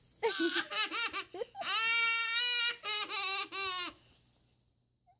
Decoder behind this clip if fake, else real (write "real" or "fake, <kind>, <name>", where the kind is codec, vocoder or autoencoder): real